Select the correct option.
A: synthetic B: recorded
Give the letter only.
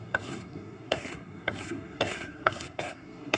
A